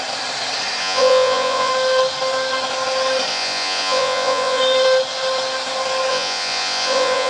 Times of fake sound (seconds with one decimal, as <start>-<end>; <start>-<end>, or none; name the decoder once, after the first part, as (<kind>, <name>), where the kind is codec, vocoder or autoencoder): 0.8-1.7 (vocoder, Vocos); 3.3-4.6; 6.1-7.3